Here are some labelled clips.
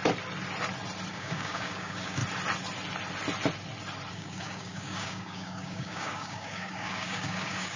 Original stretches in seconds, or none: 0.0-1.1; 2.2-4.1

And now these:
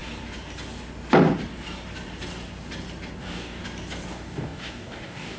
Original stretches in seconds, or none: 0.0-3.2; 3.6-4.1

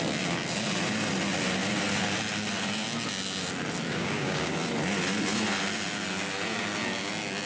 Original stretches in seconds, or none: 0.0-3.9; 4.5-7.5

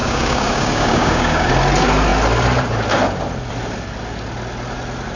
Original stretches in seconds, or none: 1.5-5.2

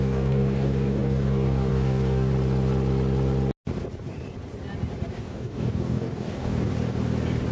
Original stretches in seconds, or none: 2.3-5.1; 6.7-7.5